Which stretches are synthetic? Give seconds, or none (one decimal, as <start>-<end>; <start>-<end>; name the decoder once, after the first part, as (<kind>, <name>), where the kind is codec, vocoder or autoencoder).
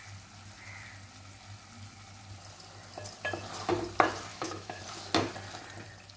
4.3-4.8 (autoencoder, DAC-VAE)